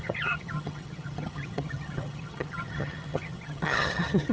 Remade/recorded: remade